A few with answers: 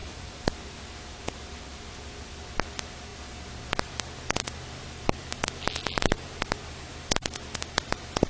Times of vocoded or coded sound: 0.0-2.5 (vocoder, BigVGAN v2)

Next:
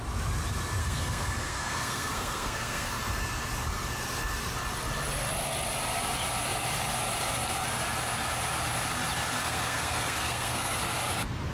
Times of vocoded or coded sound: 0.8-3.0 (codec, SNAC); 9.4-10.8

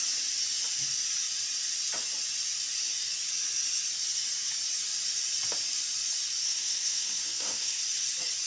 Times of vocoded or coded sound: 6.4-7.8 (codec, SNAC)

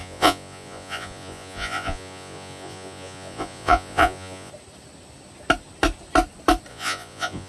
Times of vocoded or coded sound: 0.0-4.5 (vocoder, Vocos); 6.7-7.5

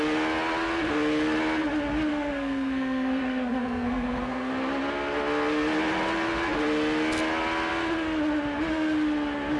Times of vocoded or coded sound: 2.1-4.5 (codec, SNAC)

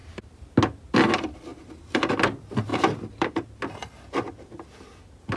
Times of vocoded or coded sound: 1.5-2.1 (vocoder, BigVGAN v2); 2.7-3.6